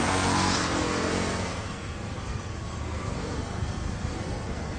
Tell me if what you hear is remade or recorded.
remade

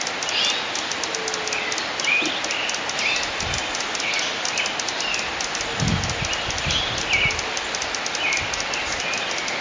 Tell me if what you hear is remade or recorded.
recorded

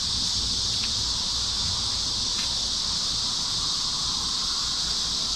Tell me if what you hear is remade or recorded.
recorded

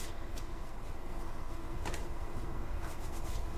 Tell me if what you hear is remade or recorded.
remade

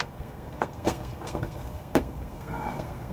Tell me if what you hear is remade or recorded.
remade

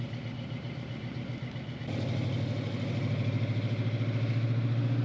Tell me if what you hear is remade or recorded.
recorded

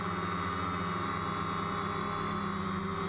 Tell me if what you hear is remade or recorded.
recorded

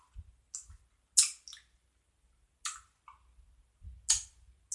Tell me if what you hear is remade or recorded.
recorded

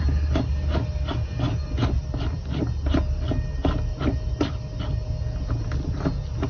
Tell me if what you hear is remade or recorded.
recorded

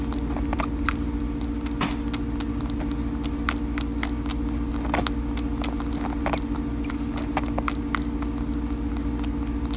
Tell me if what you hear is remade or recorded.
recorded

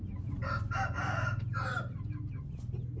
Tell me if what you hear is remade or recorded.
recorded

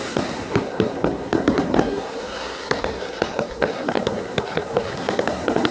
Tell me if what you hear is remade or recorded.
remade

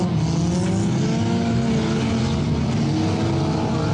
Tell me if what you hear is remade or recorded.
recorded